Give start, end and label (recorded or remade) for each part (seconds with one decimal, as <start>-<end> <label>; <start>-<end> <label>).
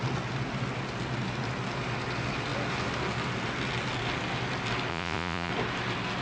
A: 0.0-4.9 recorded; 4.9-5.5 remade; 5.5-6.2 recorded